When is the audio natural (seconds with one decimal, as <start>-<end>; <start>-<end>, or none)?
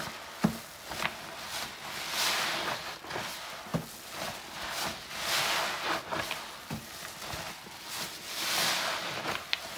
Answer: 0.0-9.8